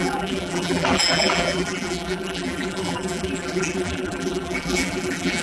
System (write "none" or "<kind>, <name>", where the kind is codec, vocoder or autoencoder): vocoder, BigVGAN v2